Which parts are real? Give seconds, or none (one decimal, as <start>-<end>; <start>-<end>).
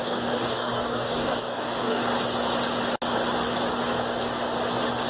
2.0-5.1